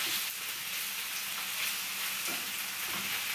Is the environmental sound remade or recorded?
recorded